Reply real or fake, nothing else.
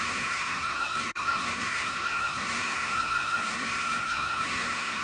fake